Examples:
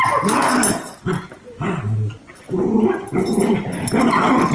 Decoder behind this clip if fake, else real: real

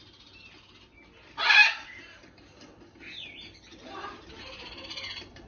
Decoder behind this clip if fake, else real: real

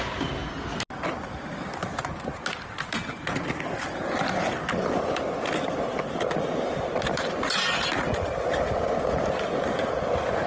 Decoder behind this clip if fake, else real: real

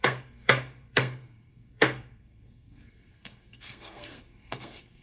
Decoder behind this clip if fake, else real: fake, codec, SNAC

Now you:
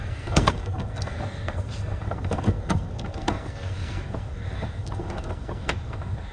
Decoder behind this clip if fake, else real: fake, codec, SNAC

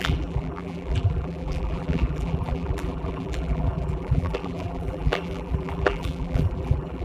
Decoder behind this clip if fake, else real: fake, vocoder, BigVGAN v2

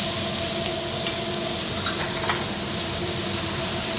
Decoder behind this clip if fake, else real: real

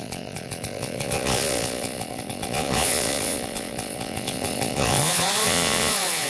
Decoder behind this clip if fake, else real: fake, vocoder, Vocos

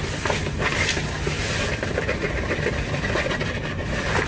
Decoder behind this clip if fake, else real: real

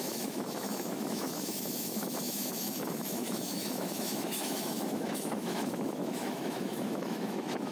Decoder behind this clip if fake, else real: fake, autoencoder, DAC-VAE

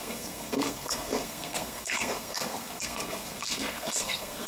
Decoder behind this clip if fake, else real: fake, codec, SNAC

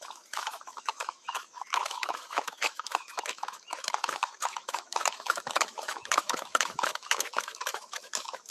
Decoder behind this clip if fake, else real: fake, autoencoder, DAC-VAE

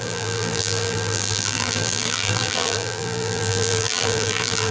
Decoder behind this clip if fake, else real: fake, vocoder, BigVGAN v2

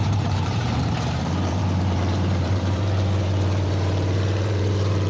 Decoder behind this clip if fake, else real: fake, vocoder, BigVGAN v2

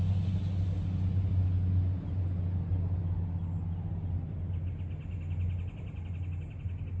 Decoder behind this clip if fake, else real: real